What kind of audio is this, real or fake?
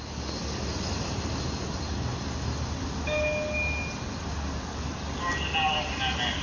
real